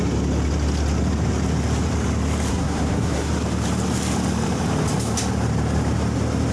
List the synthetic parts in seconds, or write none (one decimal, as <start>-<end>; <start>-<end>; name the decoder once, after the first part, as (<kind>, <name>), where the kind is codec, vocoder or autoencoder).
2.5-3.3 (codec, SNAC)